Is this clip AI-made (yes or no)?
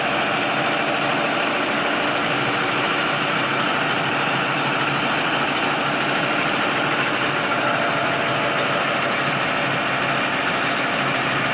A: no